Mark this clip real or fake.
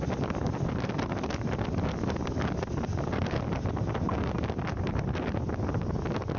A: real